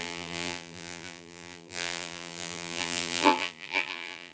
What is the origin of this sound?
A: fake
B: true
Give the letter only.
A